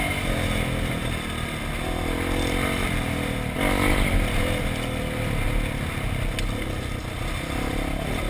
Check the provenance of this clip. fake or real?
real